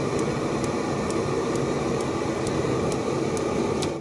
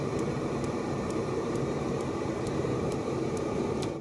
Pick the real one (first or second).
first